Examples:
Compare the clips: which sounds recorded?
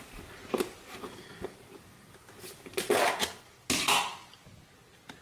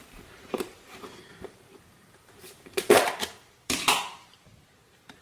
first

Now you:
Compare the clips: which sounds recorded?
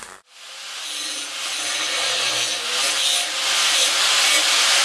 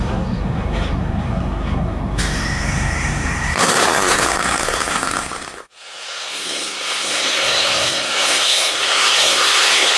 first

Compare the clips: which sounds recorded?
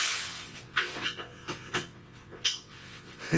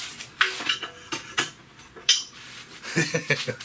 second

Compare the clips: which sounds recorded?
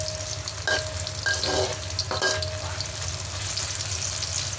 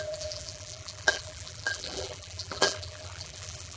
first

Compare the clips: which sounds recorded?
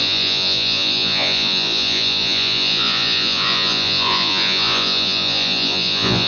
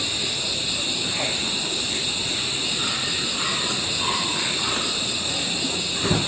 second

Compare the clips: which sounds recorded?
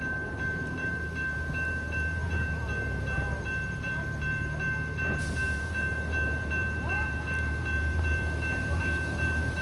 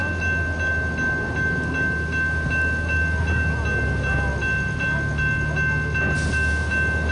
second